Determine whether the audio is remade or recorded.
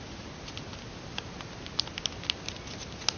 recorded